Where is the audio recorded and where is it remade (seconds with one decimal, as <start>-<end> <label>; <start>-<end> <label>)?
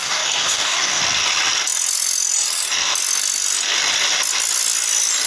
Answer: 0.0-1.0 remade; 1.0-5.3 recorded